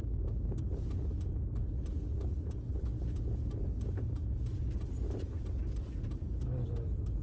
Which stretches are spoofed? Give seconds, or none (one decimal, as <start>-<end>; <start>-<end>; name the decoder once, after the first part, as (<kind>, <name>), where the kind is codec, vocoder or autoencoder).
0.0-0.6 (codec, DAC)